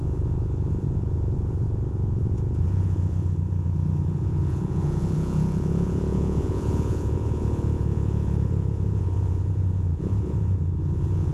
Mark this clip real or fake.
fake